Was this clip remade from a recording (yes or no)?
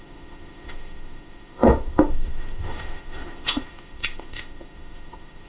yes